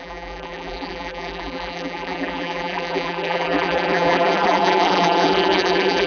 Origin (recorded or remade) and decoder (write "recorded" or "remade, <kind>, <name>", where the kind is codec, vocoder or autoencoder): remade, vocoder, BigVGAN v2